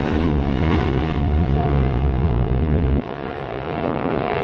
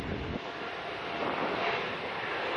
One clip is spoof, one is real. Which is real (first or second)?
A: second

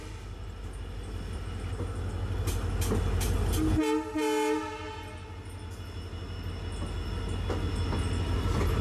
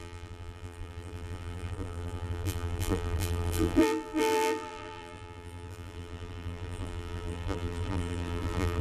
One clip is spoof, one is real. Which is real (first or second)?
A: first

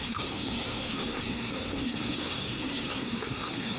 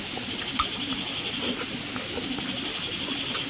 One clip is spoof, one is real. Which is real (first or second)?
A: second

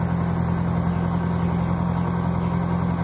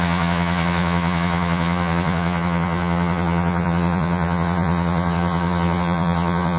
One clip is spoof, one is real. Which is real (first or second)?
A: first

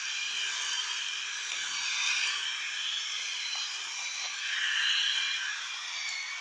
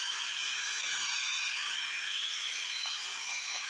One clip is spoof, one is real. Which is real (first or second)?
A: first